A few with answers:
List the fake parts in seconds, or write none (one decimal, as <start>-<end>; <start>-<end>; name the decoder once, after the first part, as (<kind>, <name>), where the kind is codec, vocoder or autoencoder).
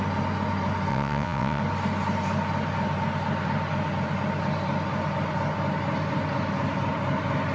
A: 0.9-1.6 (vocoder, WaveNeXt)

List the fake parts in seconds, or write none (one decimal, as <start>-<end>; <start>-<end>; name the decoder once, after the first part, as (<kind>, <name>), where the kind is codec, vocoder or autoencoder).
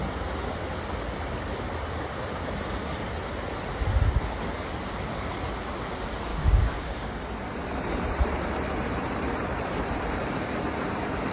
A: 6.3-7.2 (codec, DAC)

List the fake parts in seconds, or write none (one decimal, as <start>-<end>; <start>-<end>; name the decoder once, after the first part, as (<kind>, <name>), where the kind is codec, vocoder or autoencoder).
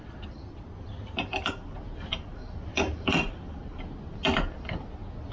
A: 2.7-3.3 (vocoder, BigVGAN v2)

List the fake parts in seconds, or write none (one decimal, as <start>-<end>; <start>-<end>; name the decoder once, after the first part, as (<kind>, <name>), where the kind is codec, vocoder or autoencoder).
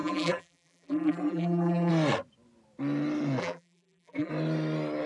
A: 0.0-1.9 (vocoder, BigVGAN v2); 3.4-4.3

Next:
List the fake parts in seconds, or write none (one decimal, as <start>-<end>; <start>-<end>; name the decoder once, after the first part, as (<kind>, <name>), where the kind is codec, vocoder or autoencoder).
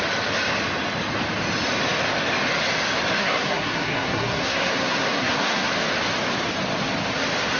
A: 3.2-5.7 (codec, SNAC)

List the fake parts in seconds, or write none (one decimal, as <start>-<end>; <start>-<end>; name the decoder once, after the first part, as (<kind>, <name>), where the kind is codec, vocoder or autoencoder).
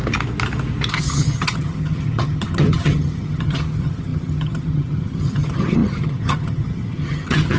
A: 0.9-7.6 (vocoder, HiFi-GAN)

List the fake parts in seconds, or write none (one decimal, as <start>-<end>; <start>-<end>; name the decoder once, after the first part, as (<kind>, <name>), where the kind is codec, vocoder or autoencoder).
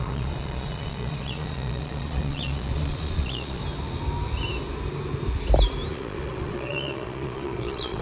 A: 0.0-3.6 (vocoder, Vocos); 5.9-8.0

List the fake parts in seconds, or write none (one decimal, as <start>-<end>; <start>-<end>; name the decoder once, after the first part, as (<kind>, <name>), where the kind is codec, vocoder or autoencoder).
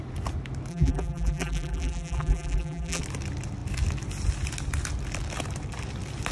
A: 0.7-3.0 (vocoder, BigVGAN v2)